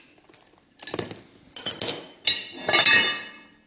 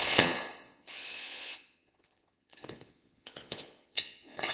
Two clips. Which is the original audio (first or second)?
first